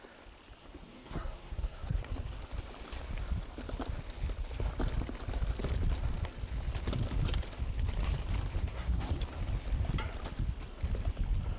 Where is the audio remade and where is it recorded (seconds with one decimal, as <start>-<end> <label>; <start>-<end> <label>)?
0.0-0.6 recorded; 0.6-2.0 remade; 2.0-8.6 recorded; 8.6-9.2 remade; 9.2-11.6 recorded